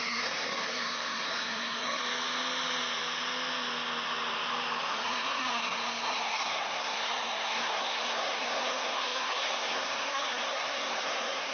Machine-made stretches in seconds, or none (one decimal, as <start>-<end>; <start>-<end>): 0.0-2.0; 4.9-11.5

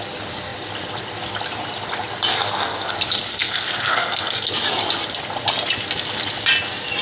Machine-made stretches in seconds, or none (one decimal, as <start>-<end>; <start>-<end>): 2.3-2.9; 3.3-4.5

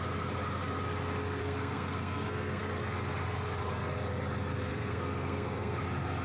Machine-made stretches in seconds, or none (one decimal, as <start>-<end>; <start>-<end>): 1.4-2.6; 4.7-5.8

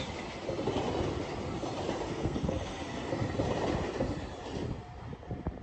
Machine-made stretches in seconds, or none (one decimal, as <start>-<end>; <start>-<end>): 2.1-3.1

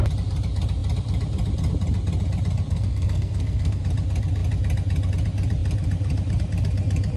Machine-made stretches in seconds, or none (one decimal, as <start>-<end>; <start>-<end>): 2.7-3.8

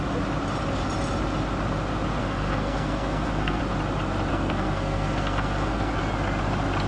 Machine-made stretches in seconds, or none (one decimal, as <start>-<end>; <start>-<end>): 2.2-3.6; 4.3-6.0

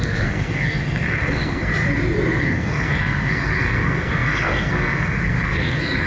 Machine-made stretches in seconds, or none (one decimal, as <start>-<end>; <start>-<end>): 0.0-1.7; 2.4-6.1

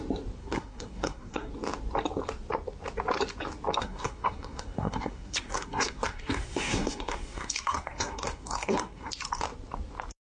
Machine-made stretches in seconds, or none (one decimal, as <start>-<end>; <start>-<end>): 0.4-1.5; 3.8-9.1